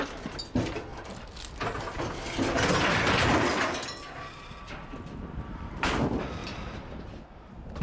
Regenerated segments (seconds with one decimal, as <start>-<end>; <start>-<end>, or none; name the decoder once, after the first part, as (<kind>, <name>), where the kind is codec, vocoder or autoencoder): none